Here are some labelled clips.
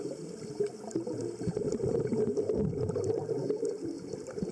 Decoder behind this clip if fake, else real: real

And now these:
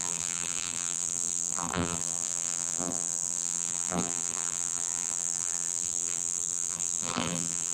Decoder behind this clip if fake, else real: fake, vocoder, BigVGAN v2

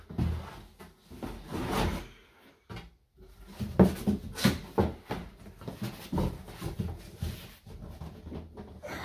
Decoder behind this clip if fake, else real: real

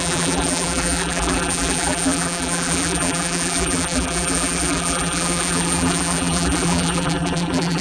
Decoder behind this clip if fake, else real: fake, vocoder, BigVGAN v2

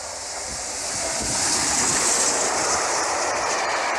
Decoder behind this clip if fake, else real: real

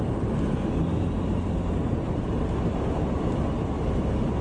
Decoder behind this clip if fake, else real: real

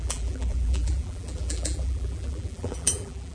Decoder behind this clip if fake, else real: fake, vocoder, BigVGAN v2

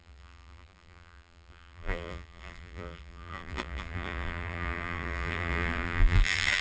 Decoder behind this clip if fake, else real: fake, vocoder, BigVGAN v2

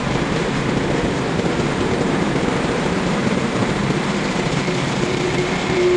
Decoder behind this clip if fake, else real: fake, vocoder, BigVGAN v2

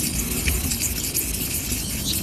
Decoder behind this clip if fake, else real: real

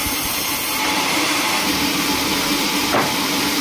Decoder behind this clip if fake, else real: fake, vocoder, BigVGAN v2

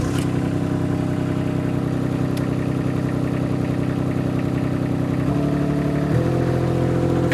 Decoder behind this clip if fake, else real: real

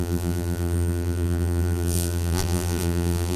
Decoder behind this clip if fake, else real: fake, vocoder, BigVGAN v2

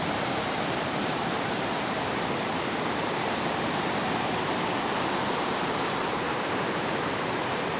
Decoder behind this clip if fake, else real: fake, vocoder, BigVGAN v2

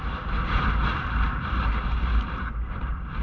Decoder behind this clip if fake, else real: fake, vocoder, BigVGAN v2